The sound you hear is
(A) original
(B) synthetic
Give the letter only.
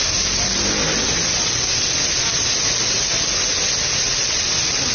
A